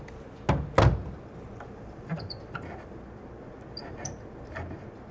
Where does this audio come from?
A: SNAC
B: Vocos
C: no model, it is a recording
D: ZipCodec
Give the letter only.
C